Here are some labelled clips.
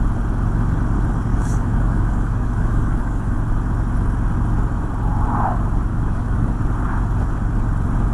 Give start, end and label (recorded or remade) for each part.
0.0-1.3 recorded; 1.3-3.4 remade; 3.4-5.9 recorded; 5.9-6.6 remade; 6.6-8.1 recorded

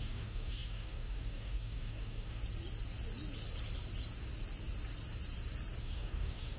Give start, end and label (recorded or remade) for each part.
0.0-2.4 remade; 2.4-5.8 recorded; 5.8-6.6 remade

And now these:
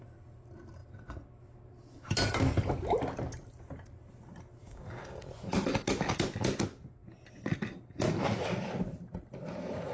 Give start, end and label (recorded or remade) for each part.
0.0-4.6 recorded; 4.6-5.2 remade; 5.2-9.9 recorded

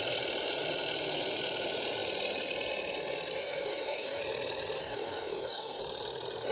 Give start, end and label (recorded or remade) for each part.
0.0-3.4 recorded; 3.4-4.2 remade; 4.2-4.8 recorded; 4.8-5.8 remade; 5.8-6.5 recorded

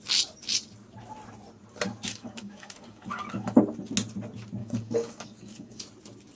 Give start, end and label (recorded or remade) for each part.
0.0-2.1 recorded; 2.1-3.6 remade; 3.6-4.6 recorded; 4.6-5.8 remade; 5.8-6.4 recorded